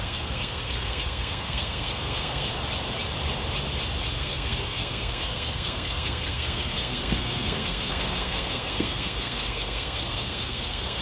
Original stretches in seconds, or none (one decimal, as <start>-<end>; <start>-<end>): 2.5-4.1